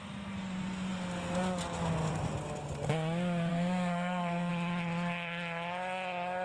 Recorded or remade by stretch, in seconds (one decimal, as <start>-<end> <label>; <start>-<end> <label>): 0.0-3.5 recorded; 3.5-4.5 remade; 4.5-6.4 recorded

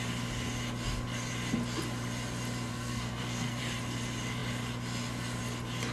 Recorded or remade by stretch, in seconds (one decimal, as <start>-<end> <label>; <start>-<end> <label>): 0.0-2.7 recorded; 2.7-3.6 remade; 3.6-5.9 recorded

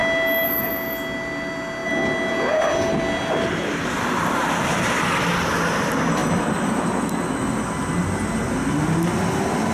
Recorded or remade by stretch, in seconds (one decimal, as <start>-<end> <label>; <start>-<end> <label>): 0.0-9.7 recorded

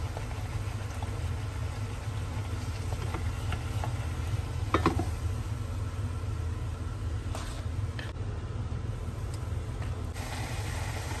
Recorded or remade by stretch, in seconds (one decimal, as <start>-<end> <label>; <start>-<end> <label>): 0.0-11.2 recorded

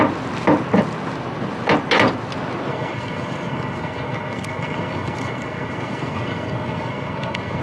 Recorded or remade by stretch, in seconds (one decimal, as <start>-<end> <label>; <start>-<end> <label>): 0.0-2.7 recorded; 2.7-7.6 remade

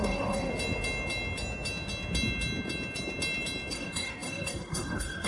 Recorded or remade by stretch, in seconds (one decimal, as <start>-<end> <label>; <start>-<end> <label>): 0.0-0.5 remade; 0.5-3.7 recorded; 3.7-5.3 remade